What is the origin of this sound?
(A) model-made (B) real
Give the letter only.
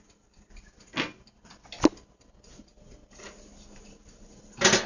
B